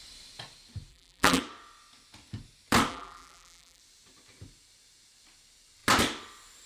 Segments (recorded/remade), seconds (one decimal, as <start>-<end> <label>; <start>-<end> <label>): 0.0-0.9 recorded; 0.9-1.4 remade; 1.4-2.9 recorded; 2.9-3.8 remade; 3.8-6.7 recorded